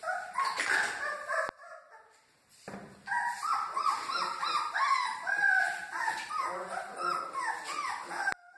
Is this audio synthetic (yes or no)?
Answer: no